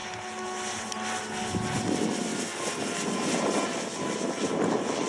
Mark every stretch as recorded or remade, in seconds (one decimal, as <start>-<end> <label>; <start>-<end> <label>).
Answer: 0.0-5.1 recorded